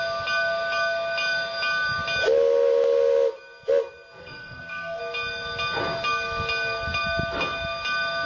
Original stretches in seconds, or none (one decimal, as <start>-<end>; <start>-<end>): 0.0-4.2; 5.0-8.3